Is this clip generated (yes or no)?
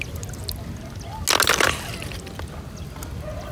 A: no